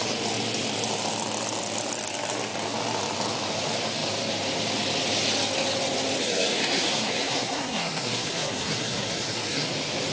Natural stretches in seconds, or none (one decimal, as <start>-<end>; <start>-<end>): 0.0-6.2; 9.7-10.1